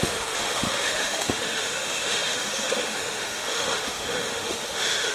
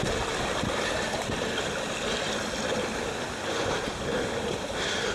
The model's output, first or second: first